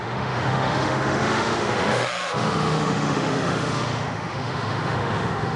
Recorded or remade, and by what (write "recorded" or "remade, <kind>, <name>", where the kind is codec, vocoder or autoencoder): remade, autoencoder, DAC-VAE